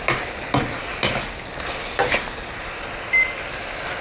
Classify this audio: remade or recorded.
recorded